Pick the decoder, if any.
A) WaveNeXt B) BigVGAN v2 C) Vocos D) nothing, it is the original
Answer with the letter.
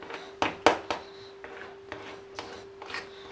D